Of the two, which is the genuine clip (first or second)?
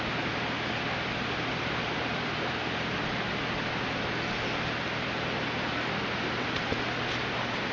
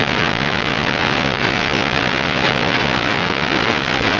first